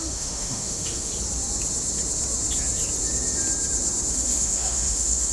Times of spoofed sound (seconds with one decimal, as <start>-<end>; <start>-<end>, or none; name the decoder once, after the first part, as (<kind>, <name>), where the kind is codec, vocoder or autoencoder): 0.0-1.1 (autoencoder, DAC-VAE); 4.1-5.3